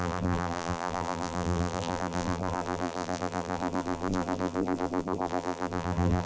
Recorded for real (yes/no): no